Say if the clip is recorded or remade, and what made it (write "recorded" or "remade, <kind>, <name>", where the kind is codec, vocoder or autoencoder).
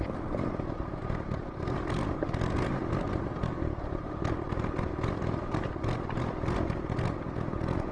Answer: recorded